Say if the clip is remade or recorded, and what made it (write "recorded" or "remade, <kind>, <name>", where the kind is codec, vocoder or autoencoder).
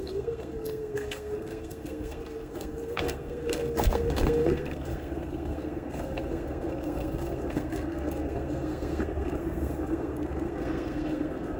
remade, codec, SNAC